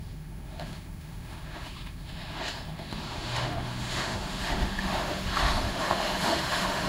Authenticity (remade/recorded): remade